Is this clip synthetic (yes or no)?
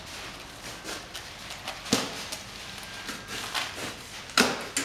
no